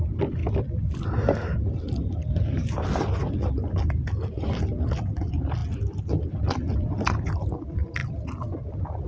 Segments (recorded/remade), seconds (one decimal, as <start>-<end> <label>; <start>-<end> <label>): 0.0-9.1 recorded